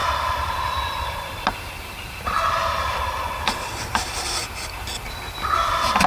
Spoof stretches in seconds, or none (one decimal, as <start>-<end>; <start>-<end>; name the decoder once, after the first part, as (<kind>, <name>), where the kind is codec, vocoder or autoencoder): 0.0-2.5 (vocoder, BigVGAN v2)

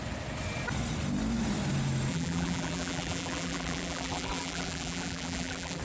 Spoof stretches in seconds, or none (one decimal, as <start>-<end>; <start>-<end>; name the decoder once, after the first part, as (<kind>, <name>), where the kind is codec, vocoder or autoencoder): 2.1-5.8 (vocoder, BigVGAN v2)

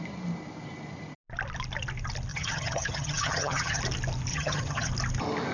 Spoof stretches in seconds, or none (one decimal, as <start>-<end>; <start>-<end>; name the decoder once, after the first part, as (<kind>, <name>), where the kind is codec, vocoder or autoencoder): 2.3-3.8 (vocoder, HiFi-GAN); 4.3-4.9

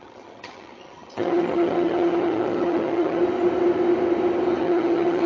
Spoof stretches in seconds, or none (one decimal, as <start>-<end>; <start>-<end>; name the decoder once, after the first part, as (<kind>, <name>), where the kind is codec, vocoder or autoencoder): 0.0-3.2 (vocoder, HiFi-GAN); 4.6-5.3

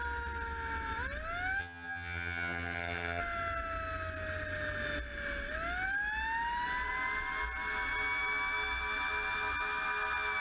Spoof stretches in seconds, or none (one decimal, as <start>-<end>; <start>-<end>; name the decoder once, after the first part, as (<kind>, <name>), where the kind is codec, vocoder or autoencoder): 1.6-3.2 (vocoder, HiFi-GAN)

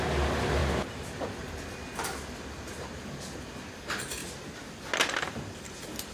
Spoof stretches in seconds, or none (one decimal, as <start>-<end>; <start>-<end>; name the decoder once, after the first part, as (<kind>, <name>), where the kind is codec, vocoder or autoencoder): none

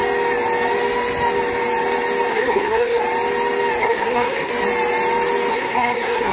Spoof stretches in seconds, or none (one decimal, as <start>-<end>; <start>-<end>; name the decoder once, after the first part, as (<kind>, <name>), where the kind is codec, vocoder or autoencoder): 2.3-3.0 (codec, SNAC); 3.8-4.5; 5.5-6.3